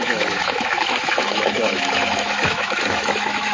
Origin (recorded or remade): remade